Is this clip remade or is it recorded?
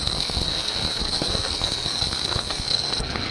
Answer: remade